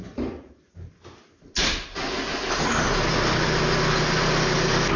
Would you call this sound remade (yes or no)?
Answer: no